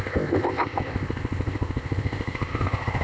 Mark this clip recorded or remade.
remade